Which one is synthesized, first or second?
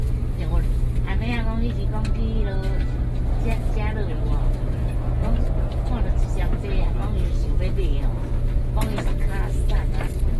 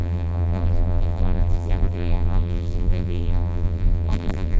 second